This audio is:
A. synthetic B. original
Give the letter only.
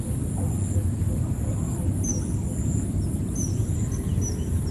B